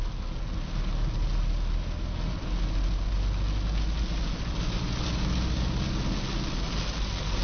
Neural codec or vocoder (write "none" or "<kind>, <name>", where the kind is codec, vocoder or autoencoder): none